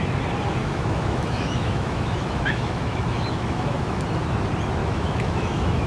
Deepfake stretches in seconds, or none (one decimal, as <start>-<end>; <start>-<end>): 0.6-4.0; 4.8-5.9